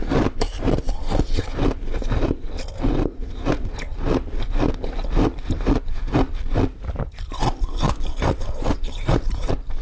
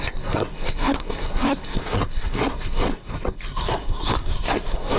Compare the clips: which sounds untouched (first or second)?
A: first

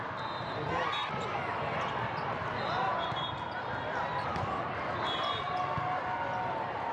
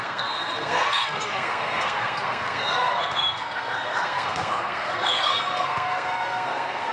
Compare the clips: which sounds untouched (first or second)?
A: first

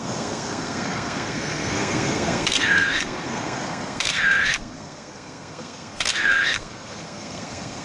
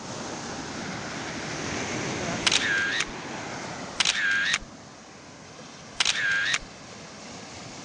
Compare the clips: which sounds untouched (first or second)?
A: second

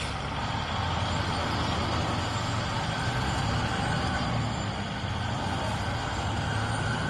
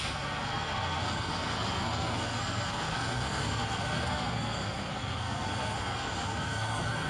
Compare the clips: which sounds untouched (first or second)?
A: first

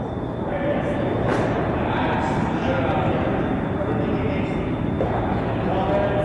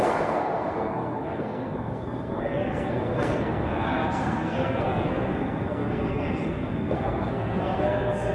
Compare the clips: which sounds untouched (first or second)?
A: first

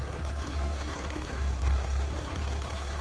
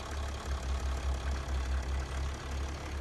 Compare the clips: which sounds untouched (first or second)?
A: second